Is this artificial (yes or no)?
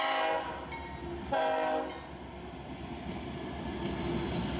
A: no